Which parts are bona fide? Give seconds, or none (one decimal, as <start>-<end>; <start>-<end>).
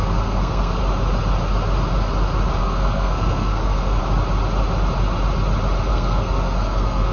0.8-2.6; 4.0-5.9